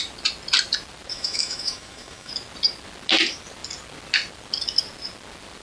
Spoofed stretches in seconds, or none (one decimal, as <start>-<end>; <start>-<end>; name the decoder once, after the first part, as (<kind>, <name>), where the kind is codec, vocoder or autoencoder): 1.1-2.3 (autoencoder, DAC-VAE)